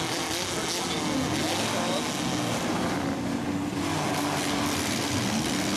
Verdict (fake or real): real